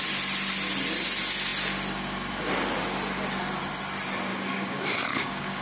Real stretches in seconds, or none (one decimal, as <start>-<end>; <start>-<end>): 0.0-4.3